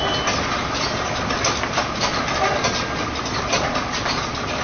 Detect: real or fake real